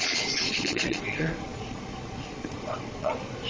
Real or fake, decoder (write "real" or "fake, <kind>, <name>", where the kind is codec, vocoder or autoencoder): fake, vocoder, Vocos